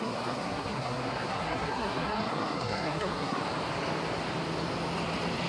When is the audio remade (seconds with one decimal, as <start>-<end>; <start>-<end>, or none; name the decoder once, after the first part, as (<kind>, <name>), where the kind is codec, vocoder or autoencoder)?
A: 0.0-3.4 (codec, SNAC)